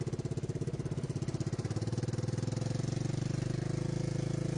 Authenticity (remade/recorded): recorded